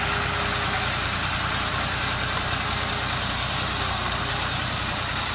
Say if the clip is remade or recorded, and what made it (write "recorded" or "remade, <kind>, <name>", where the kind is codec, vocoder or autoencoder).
recorded